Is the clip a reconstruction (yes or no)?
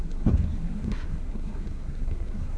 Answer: yes